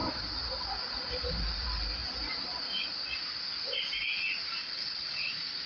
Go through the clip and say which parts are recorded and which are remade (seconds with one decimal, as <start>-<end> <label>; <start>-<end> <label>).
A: 0.0-4.6 recorded; 4.6-5.3 remade; 5.3-5.7 recorded